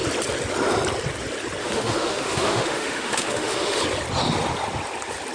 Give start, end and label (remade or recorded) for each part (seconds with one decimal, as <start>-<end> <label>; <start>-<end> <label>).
0.0-1.6 recorded; 1.6-3.8 remade; 3.8-5.3 recorded

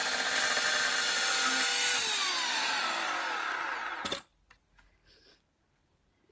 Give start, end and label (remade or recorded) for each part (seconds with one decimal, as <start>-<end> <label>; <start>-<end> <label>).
0.0-6.3 recorded